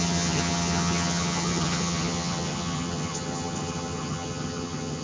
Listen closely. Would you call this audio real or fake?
fake